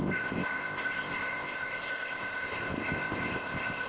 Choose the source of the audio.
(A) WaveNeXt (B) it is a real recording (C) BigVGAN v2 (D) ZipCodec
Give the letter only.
D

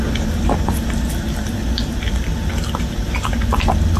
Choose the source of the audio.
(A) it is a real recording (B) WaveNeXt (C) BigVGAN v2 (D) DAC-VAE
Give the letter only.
A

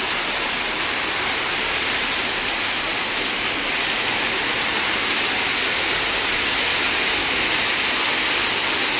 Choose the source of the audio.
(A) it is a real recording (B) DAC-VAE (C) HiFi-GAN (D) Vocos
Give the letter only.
A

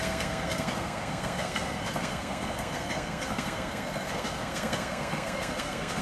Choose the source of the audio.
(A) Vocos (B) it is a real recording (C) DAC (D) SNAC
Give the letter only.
D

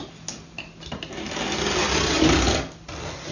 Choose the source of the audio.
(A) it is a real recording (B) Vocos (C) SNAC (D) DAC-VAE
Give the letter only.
A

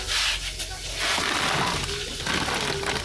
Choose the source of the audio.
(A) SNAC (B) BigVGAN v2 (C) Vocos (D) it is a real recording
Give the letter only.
D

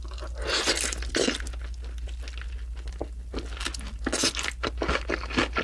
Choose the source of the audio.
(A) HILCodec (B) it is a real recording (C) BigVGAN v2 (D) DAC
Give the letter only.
B